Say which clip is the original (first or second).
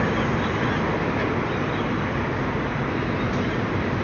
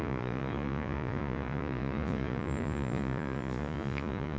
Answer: first